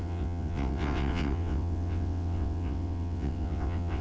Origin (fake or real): fake